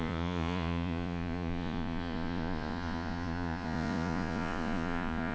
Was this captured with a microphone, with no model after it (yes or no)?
no